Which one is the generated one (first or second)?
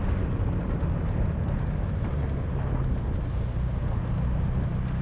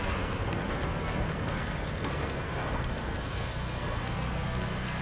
second